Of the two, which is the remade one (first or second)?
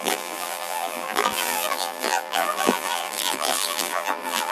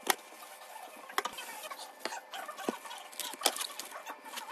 first